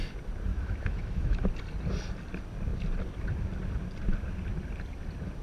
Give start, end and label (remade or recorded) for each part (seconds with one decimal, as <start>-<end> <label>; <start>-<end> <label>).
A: 0.0-0.5 recorded; 0.5-1.4 remade; 1.4-5.4 recorded